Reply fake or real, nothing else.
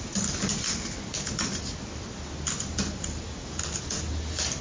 real